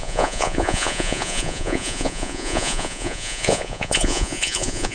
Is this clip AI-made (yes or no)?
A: yes